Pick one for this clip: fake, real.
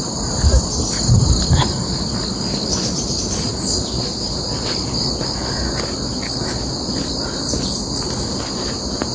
real